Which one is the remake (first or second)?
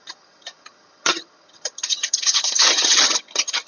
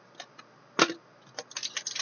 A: first